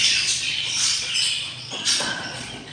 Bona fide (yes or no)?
no